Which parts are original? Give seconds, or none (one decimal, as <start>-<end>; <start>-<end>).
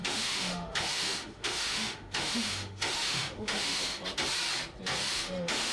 3.9-5.1